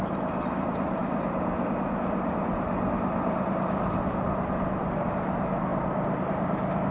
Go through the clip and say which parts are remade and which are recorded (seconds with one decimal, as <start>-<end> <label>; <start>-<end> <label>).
0.0-5.7 recorded; 5.7-6.3 remade; 6.3-6.9 recorded